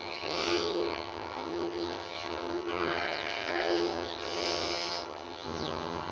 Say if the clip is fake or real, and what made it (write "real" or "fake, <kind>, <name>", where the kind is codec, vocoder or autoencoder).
fake, vocoder, HiFi-GAN